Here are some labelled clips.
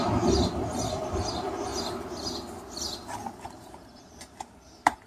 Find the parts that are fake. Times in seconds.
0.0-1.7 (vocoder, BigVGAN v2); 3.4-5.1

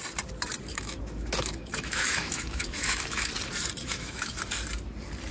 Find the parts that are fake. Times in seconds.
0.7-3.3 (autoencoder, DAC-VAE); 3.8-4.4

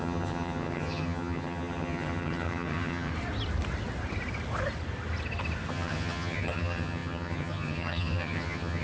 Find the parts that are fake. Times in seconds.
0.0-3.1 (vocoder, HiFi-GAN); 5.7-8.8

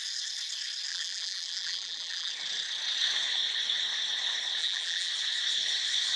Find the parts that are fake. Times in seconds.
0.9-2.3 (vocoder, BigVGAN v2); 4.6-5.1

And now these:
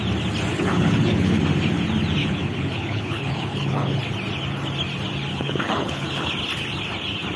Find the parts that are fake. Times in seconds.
0.5-1.4 (codec, HILCodec); 2.2-4.0; 5.3-6.3